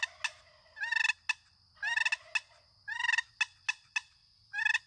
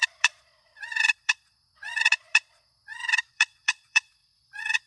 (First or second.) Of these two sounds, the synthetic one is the second